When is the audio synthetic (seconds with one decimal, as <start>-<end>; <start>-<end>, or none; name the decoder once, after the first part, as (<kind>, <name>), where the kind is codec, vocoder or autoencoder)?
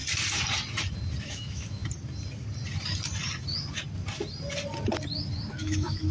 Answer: 1.2-1.8 (autoencoder, DAC-VAE); 5.5-6.1